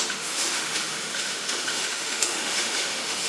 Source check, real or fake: fake